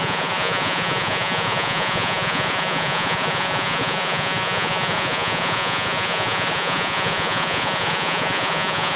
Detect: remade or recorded remade